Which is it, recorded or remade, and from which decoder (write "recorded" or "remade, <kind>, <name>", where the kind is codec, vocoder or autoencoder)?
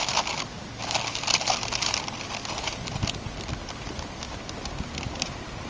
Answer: recorded